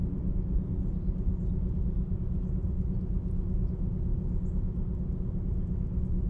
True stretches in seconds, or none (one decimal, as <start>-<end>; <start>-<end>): 0.0-6.3